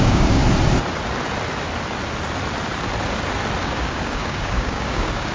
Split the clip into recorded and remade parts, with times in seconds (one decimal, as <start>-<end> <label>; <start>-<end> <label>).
0.0-0.4 remade; 0.4-3.6 recorded; 3.6-5.3 remade

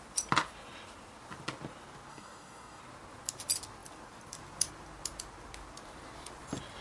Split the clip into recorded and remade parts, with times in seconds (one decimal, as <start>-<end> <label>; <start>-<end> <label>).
0.0-2.1 recorded; 2.1-2.8 remade; 2.8-6.8 recorded